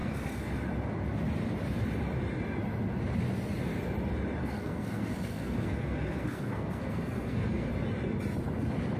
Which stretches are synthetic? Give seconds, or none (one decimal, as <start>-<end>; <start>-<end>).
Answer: 0.0-0.5; 4.4-7.7

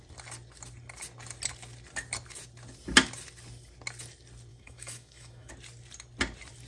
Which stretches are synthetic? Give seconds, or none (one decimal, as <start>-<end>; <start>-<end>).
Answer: 4.5-5.5